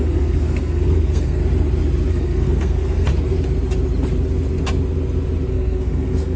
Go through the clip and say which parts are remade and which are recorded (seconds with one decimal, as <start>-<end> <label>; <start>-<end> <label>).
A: 0.0-1.4 remade; 1.4-2.1 recorded; 2.1-3.1 remade; 3.1-5.5 recorded; 5.5-6.4 remade